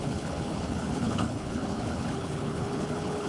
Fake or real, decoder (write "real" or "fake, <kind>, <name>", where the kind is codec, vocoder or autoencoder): fake, codec, HILCodec